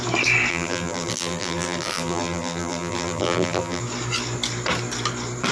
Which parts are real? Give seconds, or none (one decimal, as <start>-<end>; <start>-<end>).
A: 0.0-0.5; 3.8-5.5